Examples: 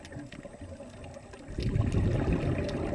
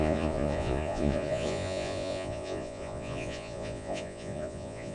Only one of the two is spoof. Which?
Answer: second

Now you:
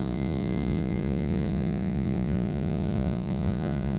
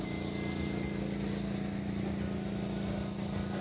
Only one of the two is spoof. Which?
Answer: first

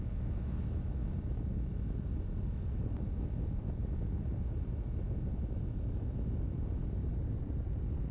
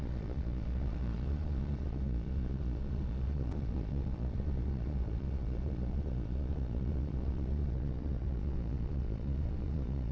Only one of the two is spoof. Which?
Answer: second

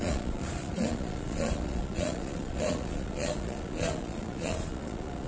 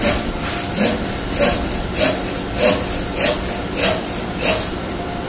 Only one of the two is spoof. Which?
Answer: first